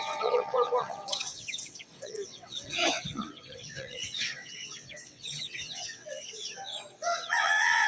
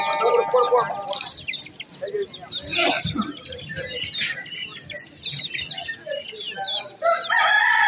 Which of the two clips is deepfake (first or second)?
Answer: first